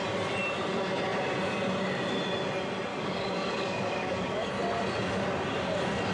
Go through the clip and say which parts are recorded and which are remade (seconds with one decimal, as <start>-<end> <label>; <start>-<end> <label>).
0.0-2.9 recorded; 2.9-4.5 remade; 4.5-6.1 recorded